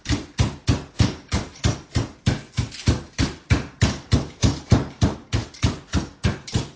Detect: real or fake real